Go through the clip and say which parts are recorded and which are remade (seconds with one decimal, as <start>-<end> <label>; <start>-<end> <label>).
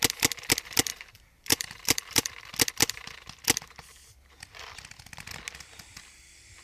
0.0-0.9 recorded; 0.9-2.3 remade; 2.3-6.6 recorded